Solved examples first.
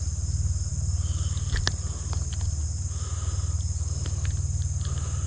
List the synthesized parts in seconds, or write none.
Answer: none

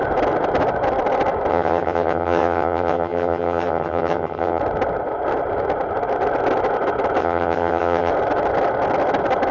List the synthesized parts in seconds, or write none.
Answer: 1.5-4.6 (vocoder, HiFi-GAN); 7.2-8.1

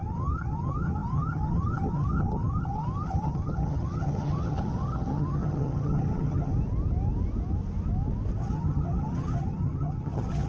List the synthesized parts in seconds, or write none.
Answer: 0.0-6.5 (vocoder, HiFi-GAN); 8.4-10.5

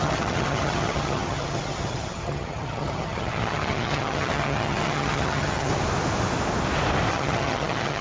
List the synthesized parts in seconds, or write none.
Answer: 0.0-5.7 (vocoder, HiFi-GAN); 7.1-8.0